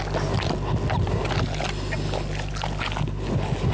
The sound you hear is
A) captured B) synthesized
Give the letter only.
A